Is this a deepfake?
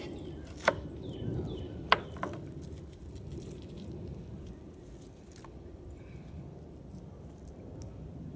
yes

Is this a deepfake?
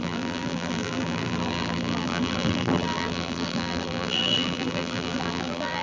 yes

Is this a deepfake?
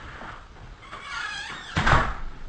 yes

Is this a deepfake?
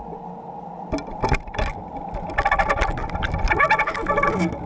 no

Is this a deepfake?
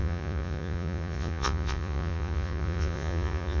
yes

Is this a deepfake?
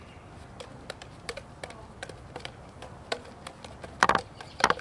yes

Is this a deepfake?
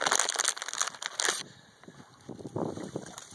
no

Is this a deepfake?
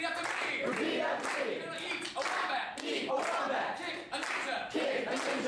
no